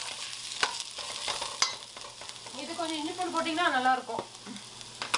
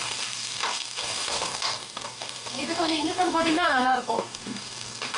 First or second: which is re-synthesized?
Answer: second